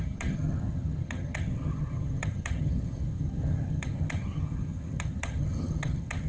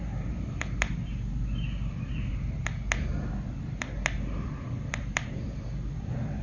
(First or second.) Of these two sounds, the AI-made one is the first